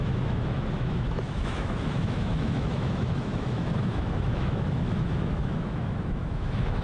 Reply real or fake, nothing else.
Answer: fake